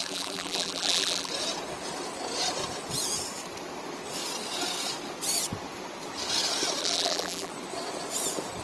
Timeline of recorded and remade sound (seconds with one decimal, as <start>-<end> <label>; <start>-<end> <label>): 0.0-1.3 remade; 1.3-6.8 recorded; 6.8-7.5 remade; 7.5-8.6 recorded